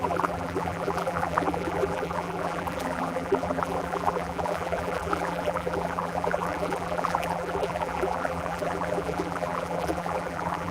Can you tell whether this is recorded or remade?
remade